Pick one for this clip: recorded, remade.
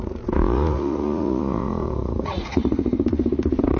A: remade